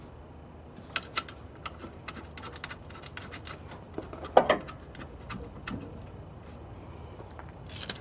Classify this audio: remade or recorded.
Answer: recorded